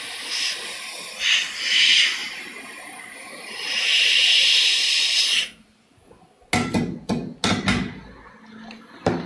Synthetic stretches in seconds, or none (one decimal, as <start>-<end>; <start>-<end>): 2.2-4.6; 5.4-6.1